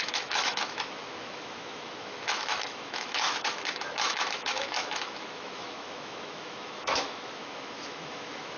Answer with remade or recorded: remade